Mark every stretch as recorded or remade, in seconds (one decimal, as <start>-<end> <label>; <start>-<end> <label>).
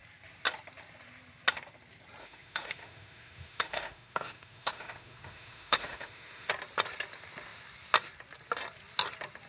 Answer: 0.0-2.2 recorded; 2.2-6.5 remade; 6.5-9.5 recorded